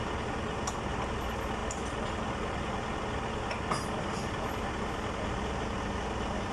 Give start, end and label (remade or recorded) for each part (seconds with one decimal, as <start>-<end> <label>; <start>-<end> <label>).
0.0-6.5 recorded